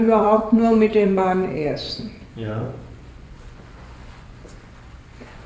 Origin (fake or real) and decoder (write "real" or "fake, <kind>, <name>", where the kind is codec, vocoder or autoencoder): fake, vocoder, Vocos